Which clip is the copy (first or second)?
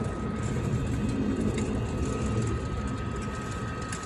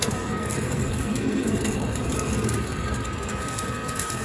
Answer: second